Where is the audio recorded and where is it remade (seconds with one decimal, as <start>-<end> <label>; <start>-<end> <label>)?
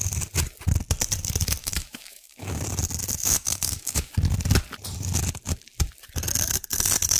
0.0-1.6 recorded; 1.6-2.6 remade; 2.6-3.2 recorded; 3.2-4.1 remade; 4.1-7.2 recorded